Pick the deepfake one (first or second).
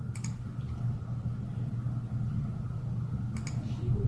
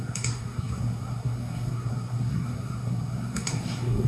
second